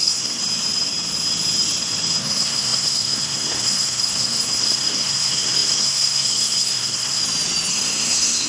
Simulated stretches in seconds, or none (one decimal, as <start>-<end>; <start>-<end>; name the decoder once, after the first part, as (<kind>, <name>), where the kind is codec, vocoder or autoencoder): 0.0-0.4 (codec, SNAC); 2.2-7.2; 7.7-8.5

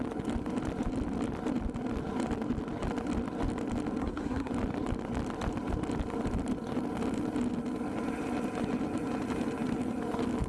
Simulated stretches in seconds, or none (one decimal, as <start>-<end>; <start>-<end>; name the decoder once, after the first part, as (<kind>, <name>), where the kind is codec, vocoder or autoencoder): 4.0-4.5 (codec, SNAC)